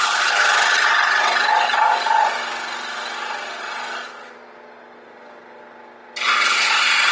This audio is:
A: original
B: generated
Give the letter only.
A